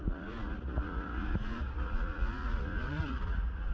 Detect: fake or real fake